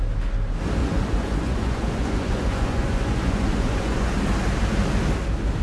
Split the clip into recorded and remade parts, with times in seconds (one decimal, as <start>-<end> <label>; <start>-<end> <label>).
0.0-0.8 recorded; 0.8-4.2 remade; 4.2-5.6 recorded